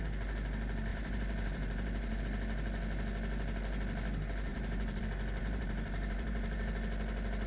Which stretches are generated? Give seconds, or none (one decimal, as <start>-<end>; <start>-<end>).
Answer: 0.9-2.2; 4.5-5.0; 5.4-6.7